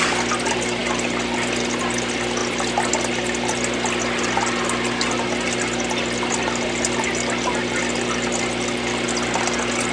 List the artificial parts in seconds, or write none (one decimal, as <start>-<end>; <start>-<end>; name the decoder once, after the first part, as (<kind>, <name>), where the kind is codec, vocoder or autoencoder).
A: none